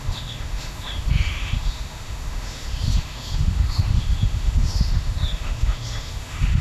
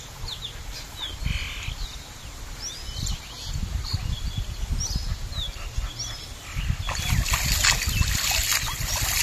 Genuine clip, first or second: second